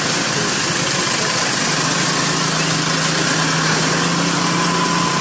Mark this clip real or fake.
real